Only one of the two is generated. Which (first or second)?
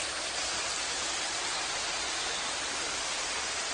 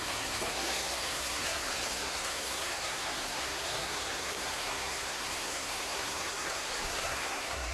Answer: second